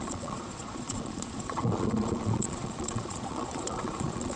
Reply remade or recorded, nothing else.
remade